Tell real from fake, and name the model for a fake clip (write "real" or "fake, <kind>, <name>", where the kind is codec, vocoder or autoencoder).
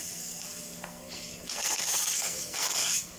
fake, codec, SNAC